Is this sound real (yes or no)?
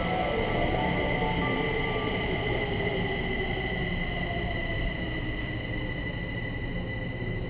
yes